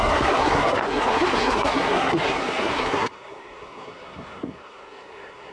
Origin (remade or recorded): remade